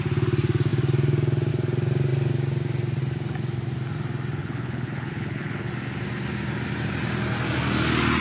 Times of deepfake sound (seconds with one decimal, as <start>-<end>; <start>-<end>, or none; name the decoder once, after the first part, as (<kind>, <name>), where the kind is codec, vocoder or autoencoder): 4.4-5.7 (codec, HILCodec)